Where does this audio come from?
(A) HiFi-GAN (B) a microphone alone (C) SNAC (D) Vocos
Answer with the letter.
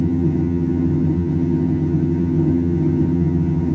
A